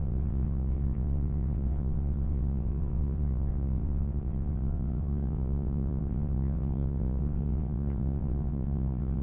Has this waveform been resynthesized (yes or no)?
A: yes